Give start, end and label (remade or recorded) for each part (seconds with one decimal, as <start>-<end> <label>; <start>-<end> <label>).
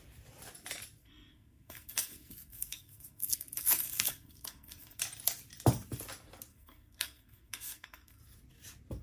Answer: 0.0-1.0 recorded; 1.0-5.0 remade; 5.0-6.5 recorded; 6.5-8.2 remade; 8.2-9.0 recorded